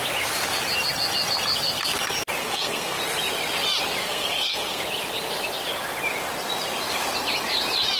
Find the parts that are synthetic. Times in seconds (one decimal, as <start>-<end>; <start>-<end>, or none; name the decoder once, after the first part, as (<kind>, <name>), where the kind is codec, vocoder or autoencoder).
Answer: 2.4-3.0 (codec, SNAC); 4.0-4.8